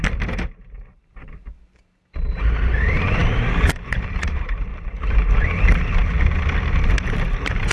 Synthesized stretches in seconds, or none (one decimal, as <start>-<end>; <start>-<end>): 0.0-1.4; 2.4-4.7; 7.0-7.7